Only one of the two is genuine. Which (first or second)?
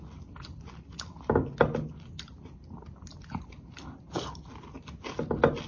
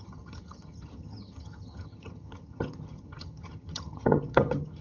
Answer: first